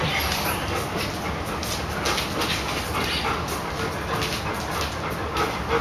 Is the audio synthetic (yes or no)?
no